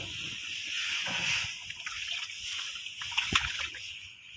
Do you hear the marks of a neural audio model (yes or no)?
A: yes